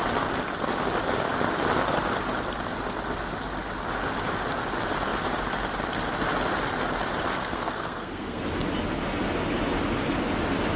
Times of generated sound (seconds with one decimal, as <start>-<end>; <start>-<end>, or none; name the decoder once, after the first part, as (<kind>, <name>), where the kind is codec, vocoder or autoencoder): 7.4-8.4 (codec, SNAC)